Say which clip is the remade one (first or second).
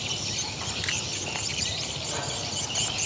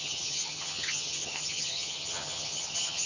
second